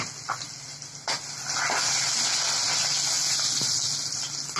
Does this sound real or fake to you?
real